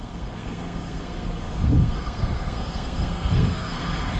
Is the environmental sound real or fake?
fake